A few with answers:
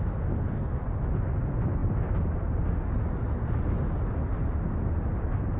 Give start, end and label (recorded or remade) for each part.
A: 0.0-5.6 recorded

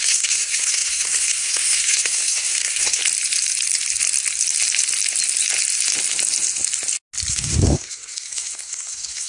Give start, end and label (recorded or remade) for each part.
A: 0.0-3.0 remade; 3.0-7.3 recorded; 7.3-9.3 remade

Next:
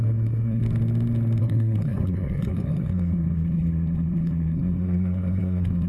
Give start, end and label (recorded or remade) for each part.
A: 0.0-0.6 remade; 0.6-1.4 recorded; 1.4-5.9 remade